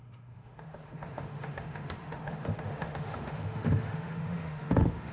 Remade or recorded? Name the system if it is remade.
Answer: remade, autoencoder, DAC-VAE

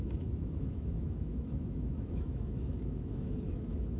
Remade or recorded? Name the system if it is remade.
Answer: remade, autoencoder, DAC-VAE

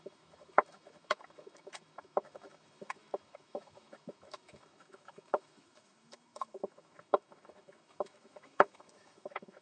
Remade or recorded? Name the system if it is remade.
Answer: remade, autoencoder, DAC-VAE